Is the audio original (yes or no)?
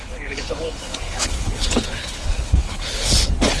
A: no